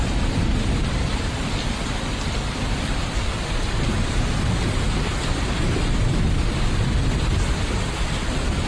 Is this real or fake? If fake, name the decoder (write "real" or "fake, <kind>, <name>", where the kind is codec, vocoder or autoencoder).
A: fake, vocoder, BigVGAN v2